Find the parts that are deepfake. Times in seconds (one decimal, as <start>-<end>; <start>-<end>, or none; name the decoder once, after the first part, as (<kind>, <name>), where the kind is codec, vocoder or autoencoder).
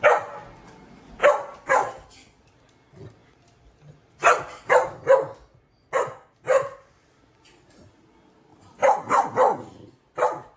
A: 3.2-4.9 (vocoder, BigVGAN v2)